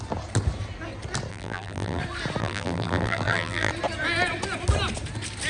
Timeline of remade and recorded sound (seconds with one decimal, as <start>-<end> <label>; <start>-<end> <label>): 0.0-1.3 recorded; 1.3-2.0 remade; 2.0-2.4 recorded; 2.4-3.7 remade; 3.7-5.5 recorded